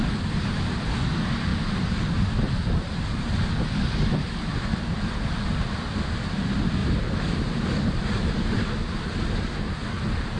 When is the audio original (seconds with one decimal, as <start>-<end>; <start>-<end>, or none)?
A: 0.0-1.5; 3.6-4.5; 5.3-6.8; 8.6-10.4